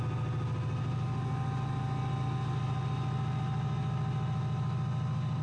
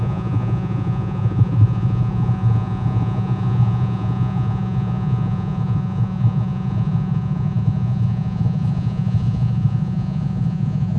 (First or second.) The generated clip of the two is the second